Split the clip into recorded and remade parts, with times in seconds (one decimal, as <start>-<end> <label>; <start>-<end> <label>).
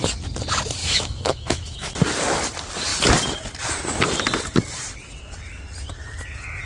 0.0-0.8 recorded; 0.8-1.9 remade; 1.9-6.7 recorded